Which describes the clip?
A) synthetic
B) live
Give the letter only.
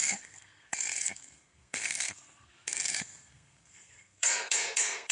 A